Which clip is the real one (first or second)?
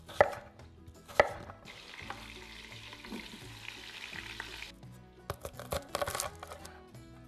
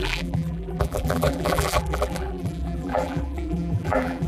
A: first